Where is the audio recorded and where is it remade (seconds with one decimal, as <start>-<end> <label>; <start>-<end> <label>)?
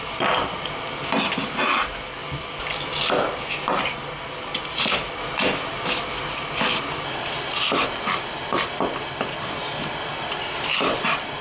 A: 0.0-11.4 recorded